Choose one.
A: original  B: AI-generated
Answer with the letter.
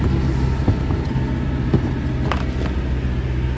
A